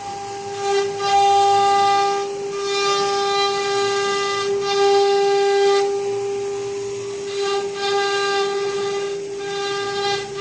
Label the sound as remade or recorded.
recorded